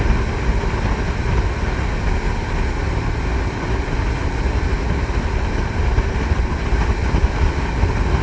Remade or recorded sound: recorded